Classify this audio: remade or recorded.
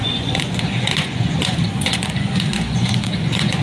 remade